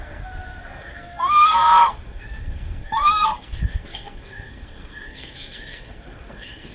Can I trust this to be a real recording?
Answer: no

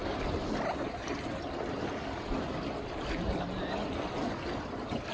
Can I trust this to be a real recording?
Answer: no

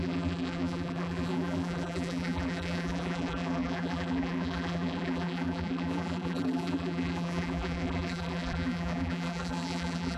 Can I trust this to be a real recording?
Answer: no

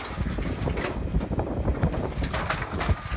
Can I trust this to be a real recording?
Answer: yes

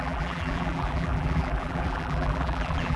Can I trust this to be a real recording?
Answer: no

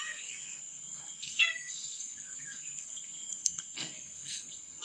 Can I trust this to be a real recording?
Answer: no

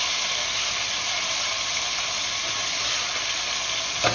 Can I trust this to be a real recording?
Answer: yes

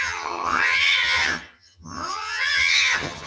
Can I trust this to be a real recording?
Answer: no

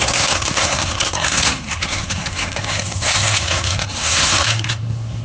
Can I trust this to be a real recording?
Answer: no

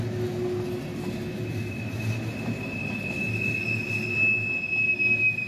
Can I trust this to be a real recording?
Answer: yes